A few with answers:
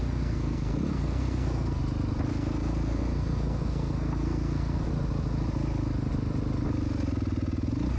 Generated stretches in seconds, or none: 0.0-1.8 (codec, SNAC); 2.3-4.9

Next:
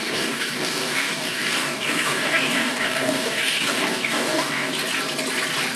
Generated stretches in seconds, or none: 0.0-4.7 (codec, DAC)

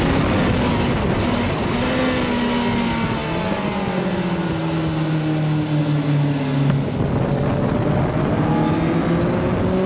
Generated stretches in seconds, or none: none

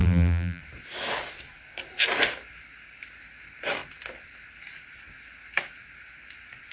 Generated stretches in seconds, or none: 0.0-0.6 (vocoder, BigVGAN v2)